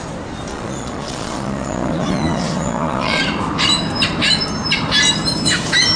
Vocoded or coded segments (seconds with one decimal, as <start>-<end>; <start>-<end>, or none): 0.5-3.2